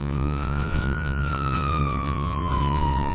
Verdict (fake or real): fake